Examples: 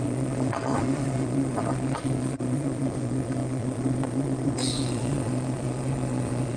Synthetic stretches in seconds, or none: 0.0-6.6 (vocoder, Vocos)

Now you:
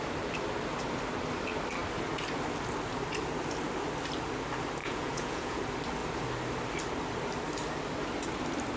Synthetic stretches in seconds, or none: 4.8-5.6 (vocoder, Vocos)